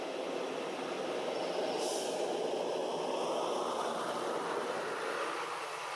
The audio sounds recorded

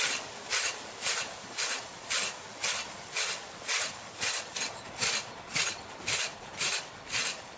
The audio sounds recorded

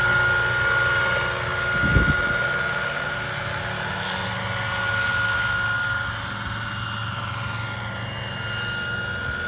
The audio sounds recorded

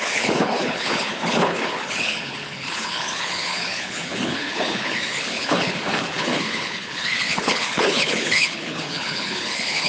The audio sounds remade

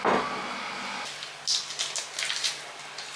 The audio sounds recorded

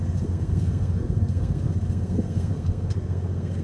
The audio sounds remade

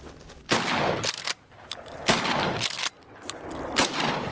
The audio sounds recorded